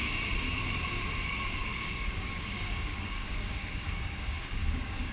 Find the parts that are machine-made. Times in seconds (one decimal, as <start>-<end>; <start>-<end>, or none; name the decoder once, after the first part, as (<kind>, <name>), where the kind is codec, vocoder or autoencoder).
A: 1.6-5.1 (codec, DAC)